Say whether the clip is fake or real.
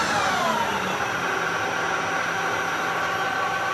real